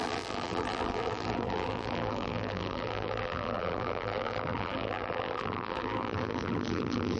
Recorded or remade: remade